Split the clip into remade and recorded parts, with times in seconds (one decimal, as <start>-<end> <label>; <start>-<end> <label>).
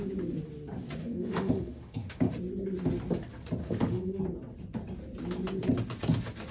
0.0-1.0 recorded; 1.0-2.3 remade; 2.3-3.6 recorded; 3.6-4.2 remade; 4.2-6.5 recorded